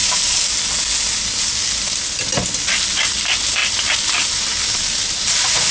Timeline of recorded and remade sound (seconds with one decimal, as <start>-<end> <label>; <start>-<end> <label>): 0.0-3.6 recorded; 3.6-5.7 remade